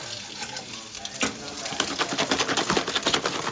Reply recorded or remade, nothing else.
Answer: recorded